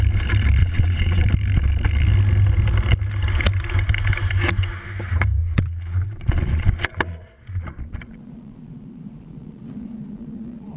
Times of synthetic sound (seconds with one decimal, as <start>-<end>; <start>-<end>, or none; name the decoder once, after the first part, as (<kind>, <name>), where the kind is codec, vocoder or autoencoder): 0.6-1.2 (vocoder, Vocos); 5.4-10.8

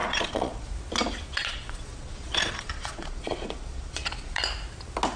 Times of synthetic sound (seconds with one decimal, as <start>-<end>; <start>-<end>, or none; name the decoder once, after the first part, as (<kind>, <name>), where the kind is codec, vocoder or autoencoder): 0.0-0.7 (vocoder, Vocos); 1.3-4.4

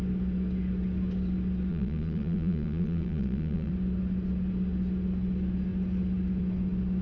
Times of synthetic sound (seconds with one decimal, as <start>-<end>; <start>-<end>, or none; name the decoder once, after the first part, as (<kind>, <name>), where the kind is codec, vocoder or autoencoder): 1.7-3.7 (vocoder, Vocos)

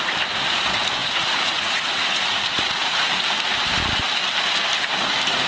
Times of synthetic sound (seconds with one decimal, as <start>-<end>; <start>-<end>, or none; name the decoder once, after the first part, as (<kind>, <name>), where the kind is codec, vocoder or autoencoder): 1.0-3.1 (vocoder, Vocos)

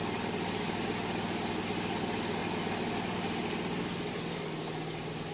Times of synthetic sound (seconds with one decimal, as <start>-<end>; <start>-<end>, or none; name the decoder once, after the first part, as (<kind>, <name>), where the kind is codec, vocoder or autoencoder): none

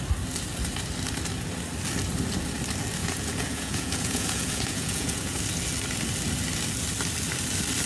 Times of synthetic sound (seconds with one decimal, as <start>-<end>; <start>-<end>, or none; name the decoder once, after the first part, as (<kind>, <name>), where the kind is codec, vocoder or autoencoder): 3.0-5.4 (vocoder, Vocos)

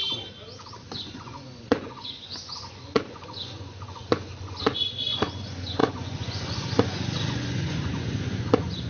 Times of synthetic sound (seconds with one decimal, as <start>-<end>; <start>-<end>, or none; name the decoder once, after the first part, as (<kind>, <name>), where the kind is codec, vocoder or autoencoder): 0.8-8.9 (vocoder, Vocos)

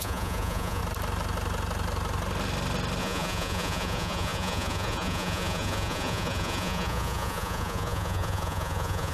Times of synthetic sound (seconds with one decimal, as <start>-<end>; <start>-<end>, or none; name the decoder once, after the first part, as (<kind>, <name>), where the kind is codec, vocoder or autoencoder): 0.0-0.8 (vocoder, Vocos); 3.0-9.1